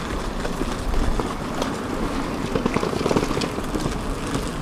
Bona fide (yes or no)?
yes